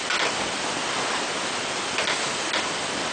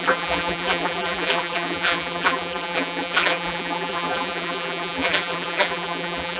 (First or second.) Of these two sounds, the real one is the first